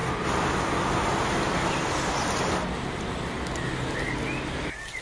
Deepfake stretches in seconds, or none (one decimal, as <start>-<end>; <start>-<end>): none